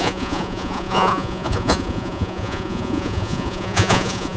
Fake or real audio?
fake